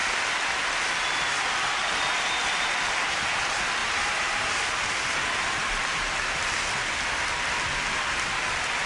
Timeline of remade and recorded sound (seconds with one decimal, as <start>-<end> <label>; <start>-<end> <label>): 0.0-3.8 recorded; 3.8-4.7 remade; 4.7-8.9 recorded